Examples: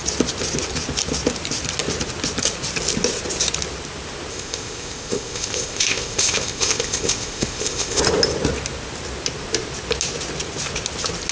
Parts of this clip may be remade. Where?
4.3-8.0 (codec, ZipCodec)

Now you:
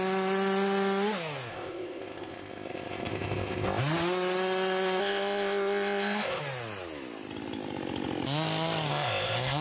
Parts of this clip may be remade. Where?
1.5-3.8 (codec, ZipCodec); 5.0-6.4; 8.9-9.6

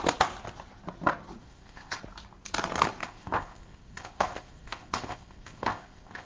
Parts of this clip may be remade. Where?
1.4-2.0 (codec, ZipCodec); 3.0-6.3

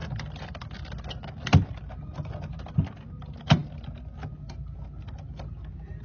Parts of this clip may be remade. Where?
none

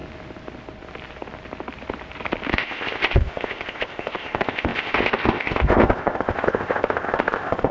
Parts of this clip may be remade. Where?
2.5-7.7 (codec, ZipCodec)